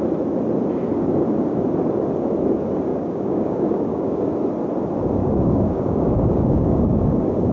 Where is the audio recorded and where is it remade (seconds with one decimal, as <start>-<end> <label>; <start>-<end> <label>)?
0.0-2.9 recorded; 2.9-4.3 remade; 4.3-5.2 recorded; 5.2-7.5 remade